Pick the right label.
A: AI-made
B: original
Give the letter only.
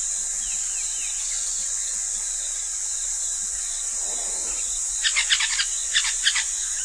B